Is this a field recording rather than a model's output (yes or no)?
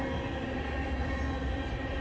yes